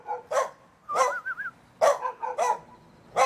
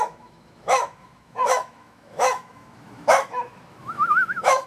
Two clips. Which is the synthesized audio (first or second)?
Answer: second